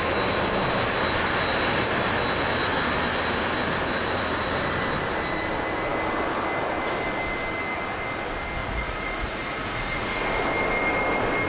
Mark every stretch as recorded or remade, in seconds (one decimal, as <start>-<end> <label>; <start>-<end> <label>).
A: 0.0-8.6 recorded; 8.6-10.4 remade; 10.4-11.5 recorded